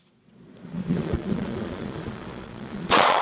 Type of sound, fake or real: fake